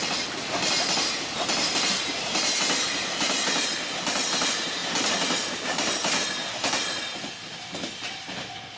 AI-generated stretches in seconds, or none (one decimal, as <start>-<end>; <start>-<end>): none

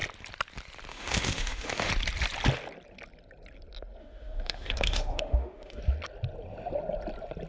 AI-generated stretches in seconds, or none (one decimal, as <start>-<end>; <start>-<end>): 0.9-1.9; 4.0-5.8

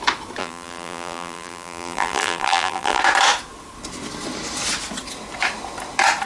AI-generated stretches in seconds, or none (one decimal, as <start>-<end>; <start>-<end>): 0.4-3.0

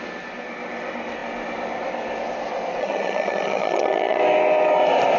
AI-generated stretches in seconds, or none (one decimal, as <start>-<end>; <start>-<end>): 2.8-4.2

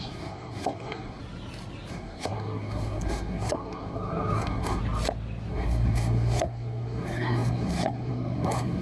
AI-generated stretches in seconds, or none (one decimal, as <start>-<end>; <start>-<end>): 0.0-1.2; 1.9-4.8; 5.5-8.8

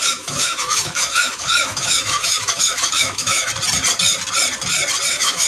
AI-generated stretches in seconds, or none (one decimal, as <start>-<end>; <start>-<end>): 0.0-3.5; 5.1-5.5